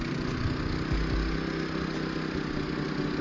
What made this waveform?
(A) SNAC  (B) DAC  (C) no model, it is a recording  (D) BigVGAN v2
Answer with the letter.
C